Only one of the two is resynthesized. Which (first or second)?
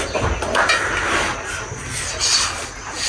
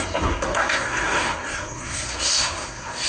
second